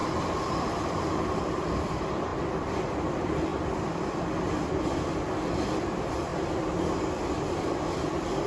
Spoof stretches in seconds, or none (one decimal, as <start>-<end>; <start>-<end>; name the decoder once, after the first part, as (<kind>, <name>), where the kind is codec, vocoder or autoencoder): 0.0-3.5 (vocoder, BigVGAN v2); 5.3-6.3; 7.7-8.5